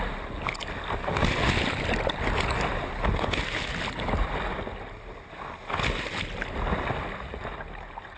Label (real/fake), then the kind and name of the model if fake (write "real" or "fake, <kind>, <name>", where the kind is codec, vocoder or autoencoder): real